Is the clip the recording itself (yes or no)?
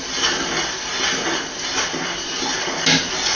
yes